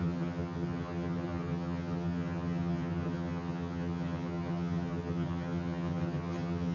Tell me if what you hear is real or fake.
fake